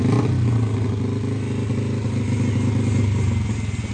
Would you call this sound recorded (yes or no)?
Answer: yes